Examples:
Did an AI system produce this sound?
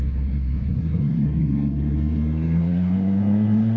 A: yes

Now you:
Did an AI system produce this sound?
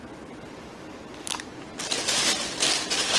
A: no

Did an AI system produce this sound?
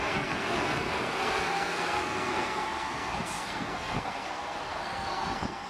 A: yes